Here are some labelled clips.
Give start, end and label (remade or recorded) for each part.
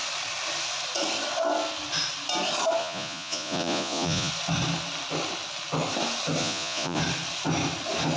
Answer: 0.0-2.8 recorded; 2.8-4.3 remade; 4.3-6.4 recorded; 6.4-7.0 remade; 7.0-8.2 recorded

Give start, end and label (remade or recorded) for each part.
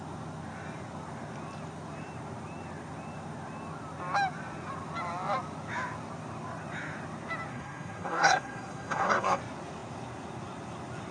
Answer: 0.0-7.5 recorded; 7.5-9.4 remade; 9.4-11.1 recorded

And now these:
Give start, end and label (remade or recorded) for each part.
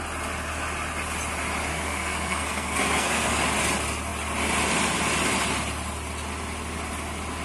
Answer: 0.0-1.7 recorded; 1.7-3.4 remade; 3.4-7.4 recorded